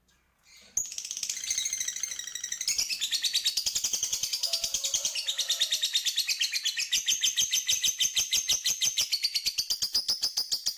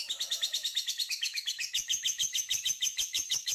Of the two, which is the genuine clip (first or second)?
first